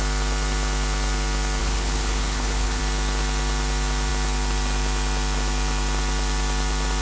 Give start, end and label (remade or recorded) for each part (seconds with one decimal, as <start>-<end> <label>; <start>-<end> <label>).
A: 0.0-1.6 recorded; 1.6-2.8 remade; 2.8-7.0 recorded